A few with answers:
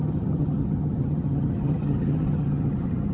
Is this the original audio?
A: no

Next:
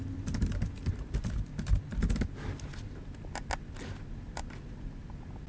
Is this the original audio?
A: yes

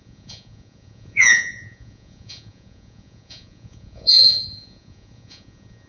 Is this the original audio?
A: no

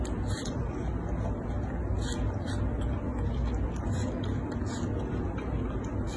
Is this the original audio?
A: yes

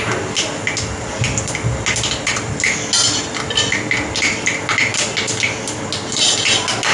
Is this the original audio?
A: yes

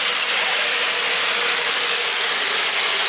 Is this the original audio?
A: yes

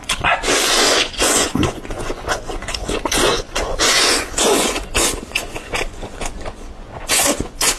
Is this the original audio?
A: no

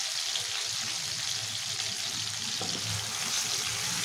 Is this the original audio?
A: yes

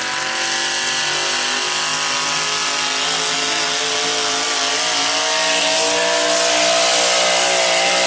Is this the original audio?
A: yes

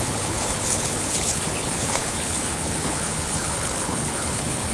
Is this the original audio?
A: no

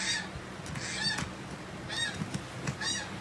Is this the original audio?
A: yes